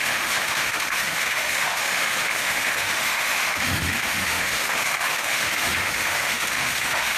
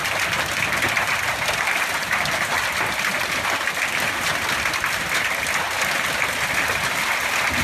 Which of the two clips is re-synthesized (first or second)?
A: first